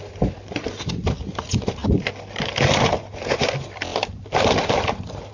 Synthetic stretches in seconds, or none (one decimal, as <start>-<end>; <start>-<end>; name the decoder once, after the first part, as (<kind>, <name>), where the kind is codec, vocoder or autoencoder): none

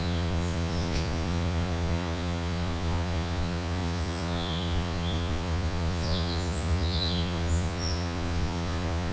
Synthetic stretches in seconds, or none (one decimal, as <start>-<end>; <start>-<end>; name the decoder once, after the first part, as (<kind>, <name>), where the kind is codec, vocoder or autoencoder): 0.0-9.1 (vocoder, Vocos)

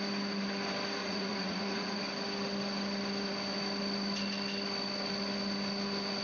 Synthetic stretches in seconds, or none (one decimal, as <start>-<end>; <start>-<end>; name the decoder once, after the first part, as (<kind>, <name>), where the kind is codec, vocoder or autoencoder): 1.0-2.0 (vocoder, Vocos)

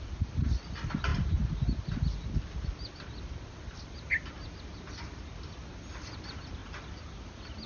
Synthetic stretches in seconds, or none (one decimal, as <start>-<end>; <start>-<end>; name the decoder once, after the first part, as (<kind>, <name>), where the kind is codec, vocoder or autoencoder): none

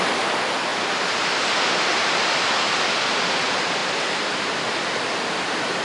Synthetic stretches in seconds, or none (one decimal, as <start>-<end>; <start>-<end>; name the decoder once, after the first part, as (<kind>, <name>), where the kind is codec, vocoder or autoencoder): none

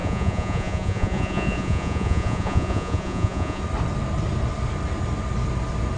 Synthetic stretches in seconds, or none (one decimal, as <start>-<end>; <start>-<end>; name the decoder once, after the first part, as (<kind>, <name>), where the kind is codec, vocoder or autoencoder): 0.0-3.6 (vocoder, Vocos)

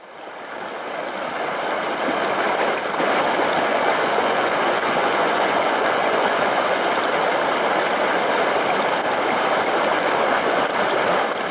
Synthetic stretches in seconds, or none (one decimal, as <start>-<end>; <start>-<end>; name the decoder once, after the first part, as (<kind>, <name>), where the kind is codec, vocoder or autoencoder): 3.7-6.9 (vocoder, Vocos); 9.9-10.6